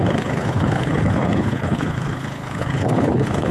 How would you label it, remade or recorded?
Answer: remade